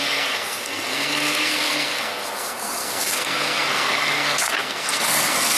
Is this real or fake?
fake